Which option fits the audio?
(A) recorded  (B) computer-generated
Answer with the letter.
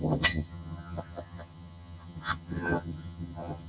B